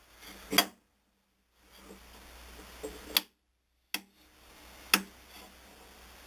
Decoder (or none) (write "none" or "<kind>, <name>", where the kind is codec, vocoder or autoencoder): none